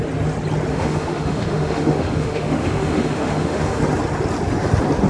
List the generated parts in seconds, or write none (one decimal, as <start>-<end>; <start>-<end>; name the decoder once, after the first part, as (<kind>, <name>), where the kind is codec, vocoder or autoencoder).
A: 0.7-3.8 (autoencoder, DAC-VAE)